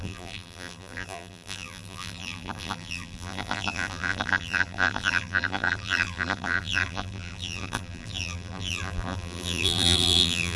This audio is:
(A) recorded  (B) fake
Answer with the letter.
B